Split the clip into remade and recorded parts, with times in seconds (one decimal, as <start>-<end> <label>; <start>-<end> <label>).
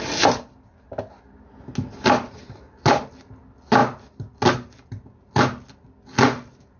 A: 0.0-6.8 recorded